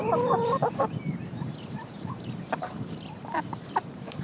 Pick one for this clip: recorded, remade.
remade